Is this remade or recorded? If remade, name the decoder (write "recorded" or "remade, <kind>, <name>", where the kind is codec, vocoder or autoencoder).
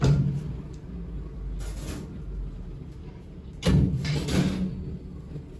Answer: recorded